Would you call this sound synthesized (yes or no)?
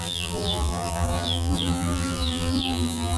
yes